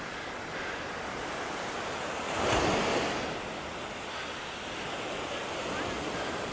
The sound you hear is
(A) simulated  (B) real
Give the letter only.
B